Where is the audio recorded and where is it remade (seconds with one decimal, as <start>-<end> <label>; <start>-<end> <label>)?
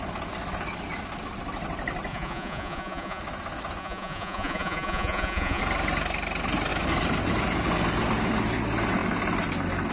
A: 0.0-2.1 recorded; 2.1-3.2 remade; 3.2-3.8 recorded; 3.8-5.6 remade; 5.6-9.9 recorded